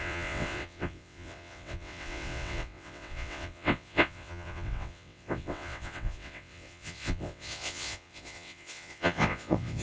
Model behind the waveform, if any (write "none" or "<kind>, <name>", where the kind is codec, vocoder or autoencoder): vocoder, WaveNeXt